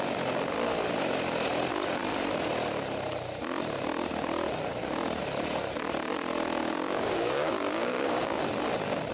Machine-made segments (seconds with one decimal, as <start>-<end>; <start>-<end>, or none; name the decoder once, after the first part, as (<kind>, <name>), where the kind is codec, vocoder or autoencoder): 6.6-8.4 (codec, DAC)